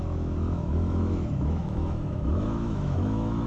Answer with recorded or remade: remade